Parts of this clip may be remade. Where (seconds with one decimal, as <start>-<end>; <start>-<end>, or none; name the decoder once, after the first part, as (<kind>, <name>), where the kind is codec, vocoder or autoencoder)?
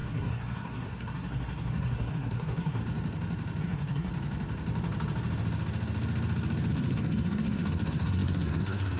0.0-2.8 (codec, SNAC); 3.6-4.1; 6.7-9.0